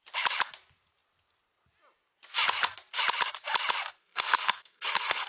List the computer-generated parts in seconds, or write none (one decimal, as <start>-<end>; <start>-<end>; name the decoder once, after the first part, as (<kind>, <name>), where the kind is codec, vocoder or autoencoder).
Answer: 4.0-5.3 (codec, SNAC)